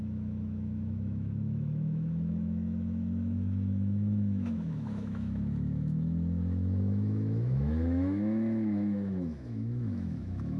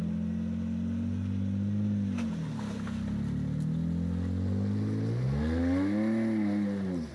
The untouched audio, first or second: second